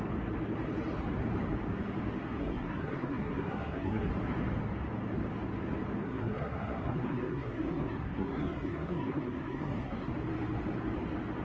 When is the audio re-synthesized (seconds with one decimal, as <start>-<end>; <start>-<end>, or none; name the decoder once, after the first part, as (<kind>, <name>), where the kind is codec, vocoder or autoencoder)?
2.4-4.1 (codec, SNAC); 6.0-10.1